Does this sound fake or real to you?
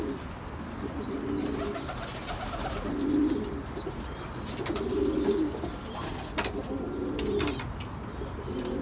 real